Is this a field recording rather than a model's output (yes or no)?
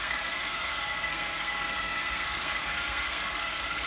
no